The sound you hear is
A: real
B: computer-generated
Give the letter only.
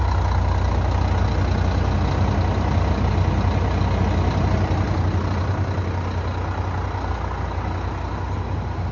A